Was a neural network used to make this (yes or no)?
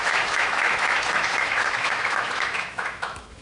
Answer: yes